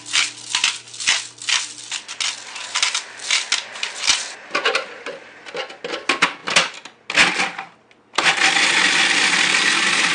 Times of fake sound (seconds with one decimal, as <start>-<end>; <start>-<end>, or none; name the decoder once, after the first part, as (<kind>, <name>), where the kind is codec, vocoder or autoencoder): none